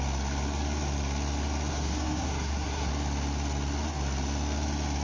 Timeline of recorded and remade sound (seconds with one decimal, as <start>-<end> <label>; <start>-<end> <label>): 0.0-1.7 recorded; 1.7-2.9 remade; 2.9-5.0 recorded